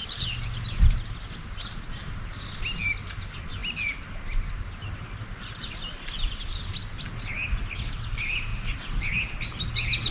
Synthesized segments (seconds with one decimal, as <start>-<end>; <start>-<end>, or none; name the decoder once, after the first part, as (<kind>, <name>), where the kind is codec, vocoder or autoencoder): none